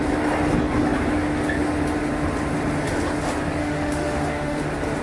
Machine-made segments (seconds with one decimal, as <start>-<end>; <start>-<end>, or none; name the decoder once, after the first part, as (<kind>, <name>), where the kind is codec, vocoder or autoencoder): 3.6-4.6 (autoencoder, DAC-VAE)